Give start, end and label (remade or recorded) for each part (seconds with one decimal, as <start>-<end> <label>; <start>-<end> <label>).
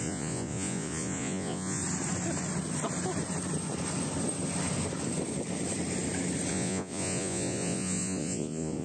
0.0-1.8 remade; 1.8-6.5 recorded; 6.5-8.8 remade